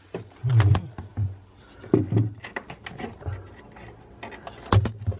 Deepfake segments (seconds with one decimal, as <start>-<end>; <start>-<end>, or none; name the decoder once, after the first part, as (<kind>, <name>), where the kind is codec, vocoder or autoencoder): 0.0-0.5 (vocoder, BigVGAN v2)